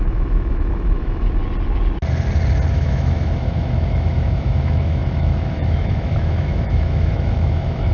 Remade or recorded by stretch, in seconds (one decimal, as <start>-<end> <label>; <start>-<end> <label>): 0.0-1.4 remade; 1.4-2.7 recorded; 2.7-7.9 remade